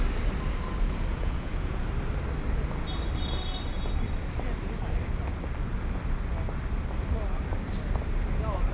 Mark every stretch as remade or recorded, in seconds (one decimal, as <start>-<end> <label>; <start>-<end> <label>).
0.0-1.1 recorded; 1.1-1.8 remade; 1.8-8.7 recorded